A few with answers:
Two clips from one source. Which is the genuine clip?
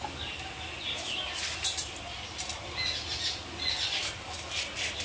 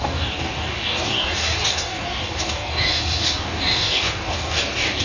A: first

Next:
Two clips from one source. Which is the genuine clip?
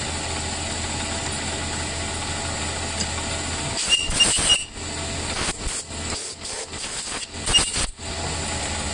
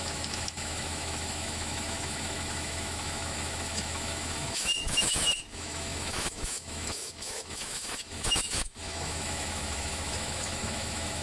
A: first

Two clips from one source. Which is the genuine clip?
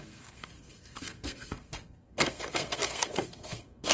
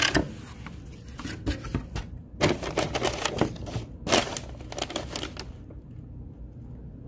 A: second